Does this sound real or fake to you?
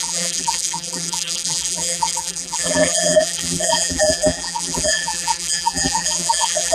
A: fake